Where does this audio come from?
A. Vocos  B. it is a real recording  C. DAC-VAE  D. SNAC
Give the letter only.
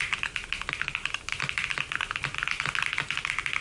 B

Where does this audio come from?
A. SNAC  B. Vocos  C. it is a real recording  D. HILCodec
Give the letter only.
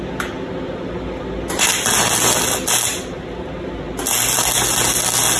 C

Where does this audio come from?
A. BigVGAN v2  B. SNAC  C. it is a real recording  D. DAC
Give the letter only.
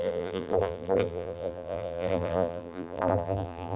A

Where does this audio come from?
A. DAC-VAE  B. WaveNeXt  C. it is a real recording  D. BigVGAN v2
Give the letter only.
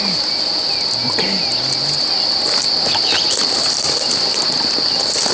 C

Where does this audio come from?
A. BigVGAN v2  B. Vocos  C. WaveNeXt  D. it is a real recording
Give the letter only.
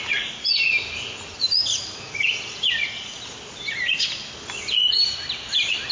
D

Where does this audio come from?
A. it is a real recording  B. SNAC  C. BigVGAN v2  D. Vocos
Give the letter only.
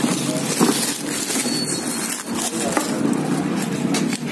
A